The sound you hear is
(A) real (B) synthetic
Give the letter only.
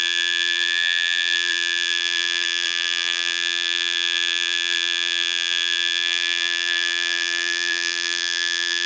B